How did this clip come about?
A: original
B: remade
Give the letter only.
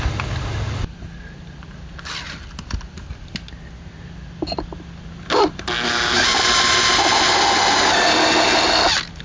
A